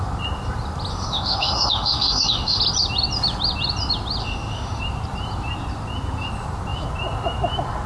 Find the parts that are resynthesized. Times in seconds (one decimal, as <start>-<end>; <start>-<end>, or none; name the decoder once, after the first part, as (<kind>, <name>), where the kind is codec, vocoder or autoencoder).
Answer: 0.9-2.6 (autoencoder, DAC-VAE); 4.2-4.8